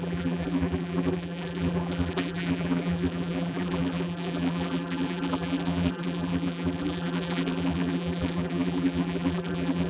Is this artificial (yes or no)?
yes